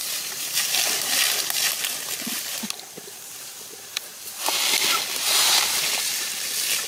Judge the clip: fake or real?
real